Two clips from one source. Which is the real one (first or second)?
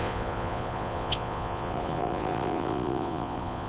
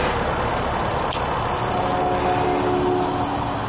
second